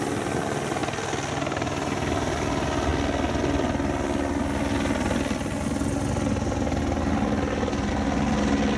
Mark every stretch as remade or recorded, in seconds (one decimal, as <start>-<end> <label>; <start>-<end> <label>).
0.0-8.8 recorded